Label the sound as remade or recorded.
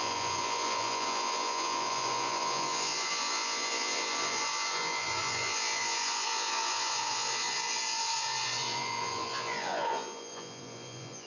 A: remade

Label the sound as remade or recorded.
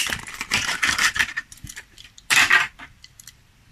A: remade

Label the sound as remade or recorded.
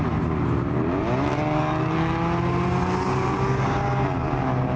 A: recorded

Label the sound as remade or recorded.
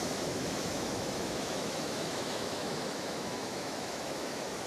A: remade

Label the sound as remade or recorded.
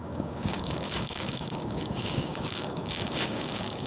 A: remade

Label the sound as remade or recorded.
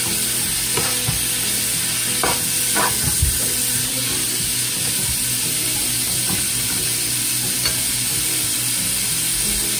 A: recorded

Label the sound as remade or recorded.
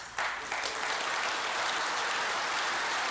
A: recorded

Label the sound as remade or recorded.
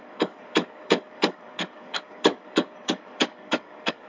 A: remade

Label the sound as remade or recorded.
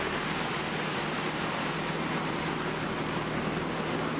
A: recorded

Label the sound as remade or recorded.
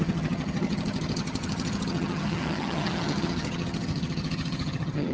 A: remade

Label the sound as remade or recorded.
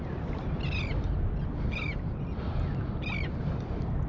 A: recorded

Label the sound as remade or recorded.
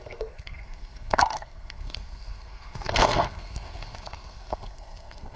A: remade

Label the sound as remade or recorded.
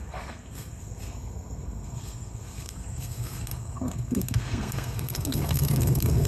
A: remade